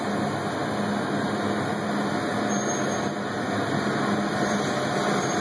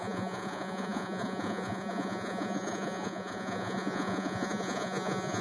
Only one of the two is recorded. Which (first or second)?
first